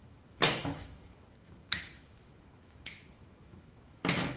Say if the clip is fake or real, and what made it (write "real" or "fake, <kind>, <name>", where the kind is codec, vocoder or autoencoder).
fake, autoencoder, DAC-VAE